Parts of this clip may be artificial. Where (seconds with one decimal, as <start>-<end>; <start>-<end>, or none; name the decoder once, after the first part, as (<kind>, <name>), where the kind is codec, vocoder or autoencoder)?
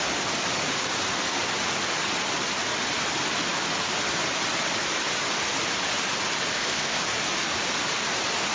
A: 6.5-7.0 (codec, ZipCodec)